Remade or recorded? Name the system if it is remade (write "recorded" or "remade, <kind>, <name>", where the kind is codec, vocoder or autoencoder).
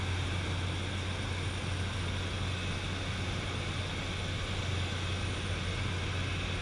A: recorded